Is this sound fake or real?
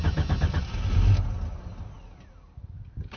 real